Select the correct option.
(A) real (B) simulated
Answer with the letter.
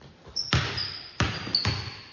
A